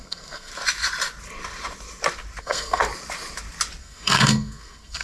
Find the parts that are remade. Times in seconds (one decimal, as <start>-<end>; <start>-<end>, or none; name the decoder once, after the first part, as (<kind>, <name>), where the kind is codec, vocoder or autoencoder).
0.0-0.5 (codec, SNAC); 2.4-2.8; 3.8-5.0